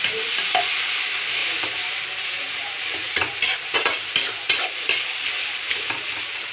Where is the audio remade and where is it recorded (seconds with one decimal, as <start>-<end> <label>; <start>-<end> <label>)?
0.0-6.5 remade